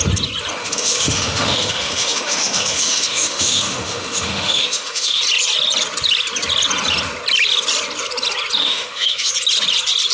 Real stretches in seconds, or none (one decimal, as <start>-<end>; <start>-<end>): 0.0-0.6; 5.2-8.6; 9.3-10.1